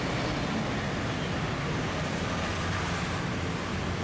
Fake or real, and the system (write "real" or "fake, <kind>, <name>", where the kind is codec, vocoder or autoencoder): real